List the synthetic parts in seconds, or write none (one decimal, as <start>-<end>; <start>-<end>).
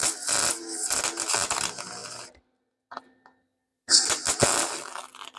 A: none